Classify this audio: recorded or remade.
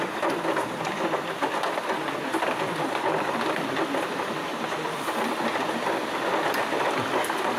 remade